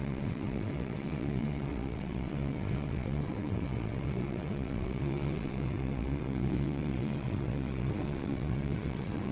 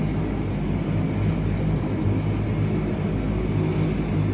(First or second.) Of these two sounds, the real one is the second